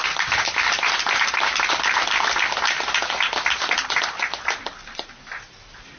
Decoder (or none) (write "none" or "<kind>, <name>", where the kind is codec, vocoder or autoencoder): none